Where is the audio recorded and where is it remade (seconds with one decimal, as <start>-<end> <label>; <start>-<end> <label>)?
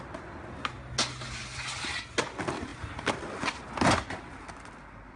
0.0-5.2 recorded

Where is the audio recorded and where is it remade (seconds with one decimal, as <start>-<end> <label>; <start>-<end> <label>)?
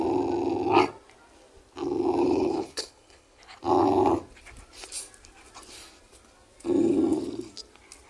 0.0-2.2 recorded; 2.2-3.4 remade; 3.4-8.1 recorded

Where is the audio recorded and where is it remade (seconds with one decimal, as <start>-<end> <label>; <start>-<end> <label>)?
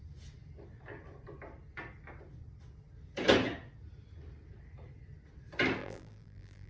0.0-5.8 recorded; 5.8-6.7 remade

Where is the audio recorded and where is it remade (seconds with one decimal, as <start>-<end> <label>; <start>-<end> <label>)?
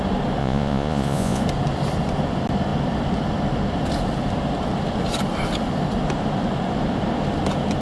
0.0-0.4 recorded; 0.4-1.4 remade; 1.4-7.8 recorded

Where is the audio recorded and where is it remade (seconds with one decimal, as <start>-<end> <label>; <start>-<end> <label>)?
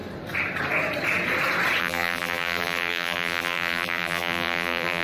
0.0-1.8 recorded; 1.8-5.0 remade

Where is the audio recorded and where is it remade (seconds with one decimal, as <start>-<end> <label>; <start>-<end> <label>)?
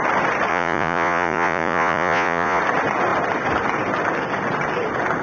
0.0-0.5 recorded; 0.5-2.6 remade; 2.6-5.2 recorded